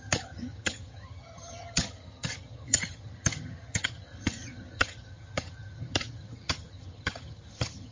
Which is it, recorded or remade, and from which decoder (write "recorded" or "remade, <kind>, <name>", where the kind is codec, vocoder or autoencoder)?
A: remade, vocoder, HiFi-GAN